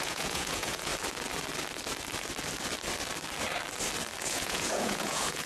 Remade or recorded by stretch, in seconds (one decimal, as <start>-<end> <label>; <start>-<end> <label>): 0.0-0.9 remade; 0.9-4.2 recorded; 4.2-5.5 remade